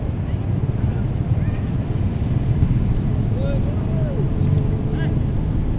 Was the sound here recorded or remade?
recorded